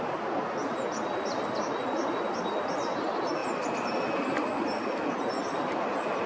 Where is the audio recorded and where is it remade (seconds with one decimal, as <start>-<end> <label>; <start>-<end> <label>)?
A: 0.0-6.3 recorded